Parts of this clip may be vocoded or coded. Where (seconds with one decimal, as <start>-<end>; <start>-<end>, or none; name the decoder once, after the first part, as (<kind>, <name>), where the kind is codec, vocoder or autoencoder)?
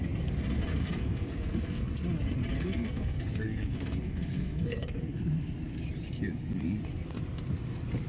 0.7-1.9 (codec, SNAC); 2.5-5.2